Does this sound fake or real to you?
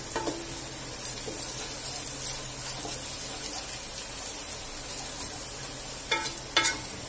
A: real